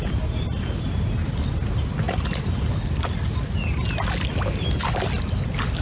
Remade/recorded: recorded